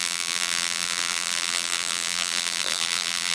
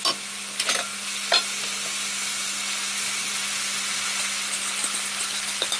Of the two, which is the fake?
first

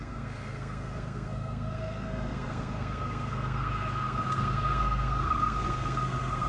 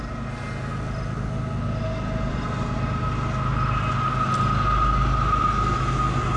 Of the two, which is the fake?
first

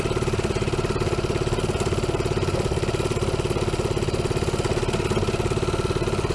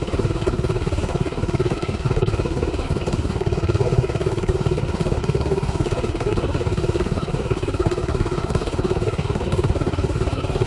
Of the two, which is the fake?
second